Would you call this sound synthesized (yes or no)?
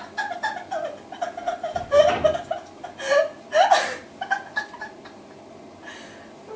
no